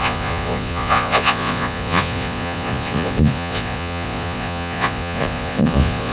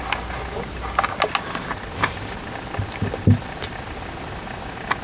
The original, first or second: second